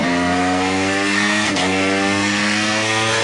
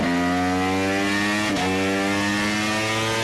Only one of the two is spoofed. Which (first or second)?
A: first